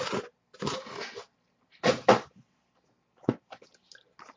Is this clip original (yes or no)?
yes